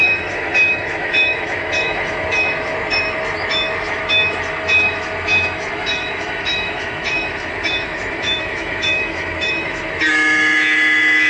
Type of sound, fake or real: fake